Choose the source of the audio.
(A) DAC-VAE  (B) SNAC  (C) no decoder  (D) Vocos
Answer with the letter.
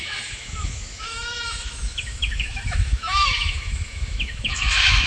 A